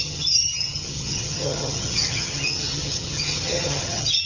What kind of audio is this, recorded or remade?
remade